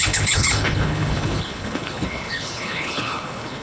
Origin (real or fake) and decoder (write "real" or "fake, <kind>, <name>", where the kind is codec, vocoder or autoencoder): fake, codec, HILCodec